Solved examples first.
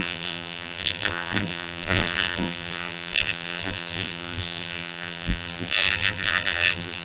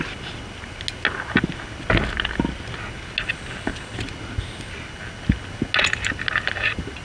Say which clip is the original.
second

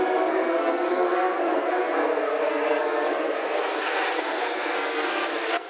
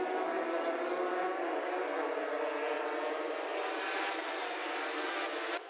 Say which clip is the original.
second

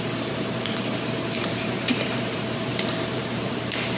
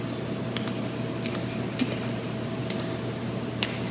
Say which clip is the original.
second